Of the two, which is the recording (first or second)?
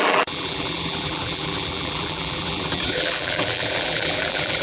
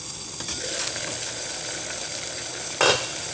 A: second